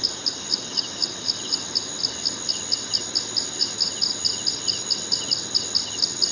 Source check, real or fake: real